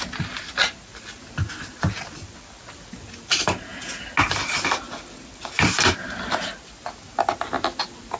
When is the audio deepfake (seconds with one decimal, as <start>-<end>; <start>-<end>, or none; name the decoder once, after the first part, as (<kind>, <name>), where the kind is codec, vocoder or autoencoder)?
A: none